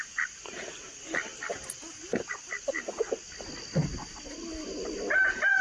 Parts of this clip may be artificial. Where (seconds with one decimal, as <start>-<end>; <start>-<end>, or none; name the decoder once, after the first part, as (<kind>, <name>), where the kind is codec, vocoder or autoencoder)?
none